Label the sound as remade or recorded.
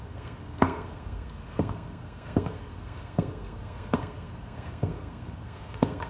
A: remade